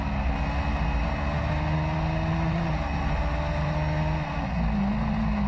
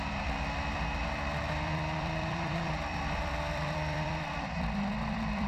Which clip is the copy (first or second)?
second